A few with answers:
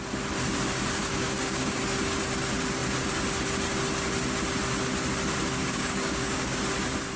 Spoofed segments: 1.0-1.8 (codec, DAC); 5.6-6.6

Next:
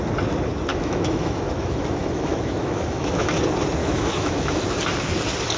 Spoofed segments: 0.7-3.4 (autoencoder, DAC-VAE); 3.8-4.6

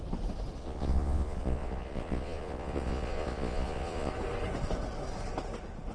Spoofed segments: 0.6-4.1 (vocoder, Vocos)

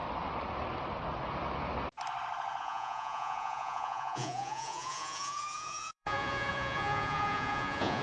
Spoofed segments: 2.6-8.0 (vocoder, Vocos)

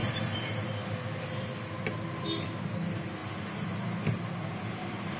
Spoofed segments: none

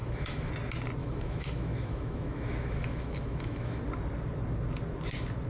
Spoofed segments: 0.0-0.5 (autoencoder, DAC-VAE); 1.0-3.8

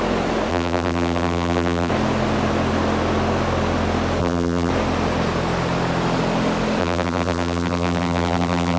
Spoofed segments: 0.5-1.9 (vocoder, BigVGAN v2); 4.2-4.7; 6.8-8.8

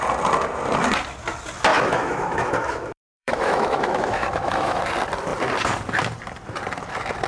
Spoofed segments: 1.7-4.8 (autoencoder, DAC-VAE)